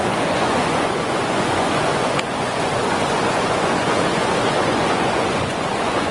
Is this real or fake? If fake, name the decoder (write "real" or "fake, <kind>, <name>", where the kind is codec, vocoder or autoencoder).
fake, vocoder, Vocos